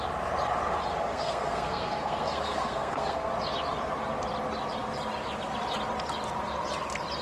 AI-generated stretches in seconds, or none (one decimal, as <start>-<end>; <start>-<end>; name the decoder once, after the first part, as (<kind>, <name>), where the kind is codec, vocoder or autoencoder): 1.1-3.3 (codec, SNAC)